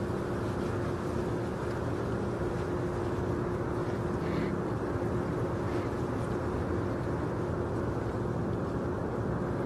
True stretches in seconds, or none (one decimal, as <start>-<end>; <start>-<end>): 0.0-9.7